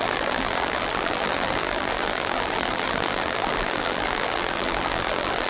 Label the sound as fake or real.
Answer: fake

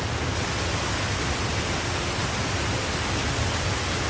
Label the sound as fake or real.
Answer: real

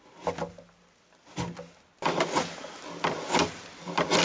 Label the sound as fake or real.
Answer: real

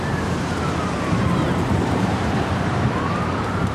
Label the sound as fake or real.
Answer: fake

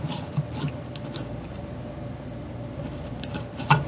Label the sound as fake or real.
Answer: real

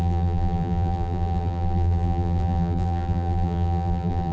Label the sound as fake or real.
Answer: fake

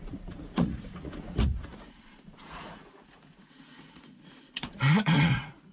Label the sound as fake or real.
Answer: fake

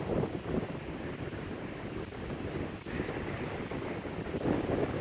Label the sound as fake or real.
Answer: real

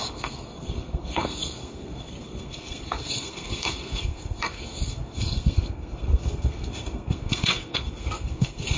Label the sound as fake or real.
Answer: fake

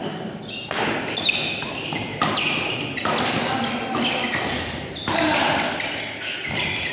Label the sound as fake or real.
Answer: real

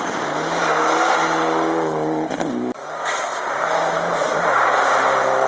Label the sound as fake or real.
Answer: real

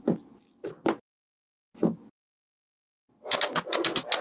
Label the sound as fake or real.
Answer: real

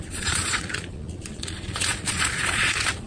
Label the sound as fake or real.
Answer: fake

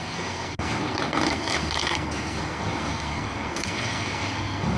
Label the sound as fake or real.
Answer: fake